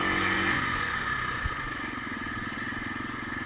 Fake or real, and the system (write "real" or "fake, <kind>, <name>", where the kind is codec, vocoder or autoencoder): fake, vocoder, Vocos